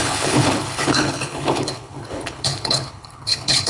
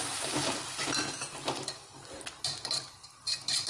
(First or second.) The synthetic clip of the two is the first